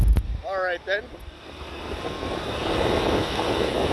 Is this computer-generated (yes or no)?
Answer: no